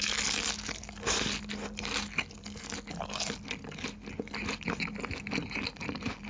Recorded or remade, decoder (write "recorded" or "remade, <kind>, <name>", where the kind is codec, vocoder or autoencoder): recorded